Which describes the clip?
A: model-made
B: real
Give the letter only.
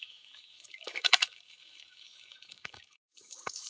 A